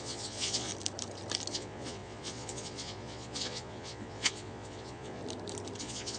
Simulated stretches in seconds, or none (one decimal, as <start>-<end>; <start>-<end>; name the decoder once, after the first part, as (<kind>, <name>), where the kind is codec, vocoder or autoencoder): 0.0-0.7 (vocoder, Vocos); 1.5-5.2; 5.8-6.2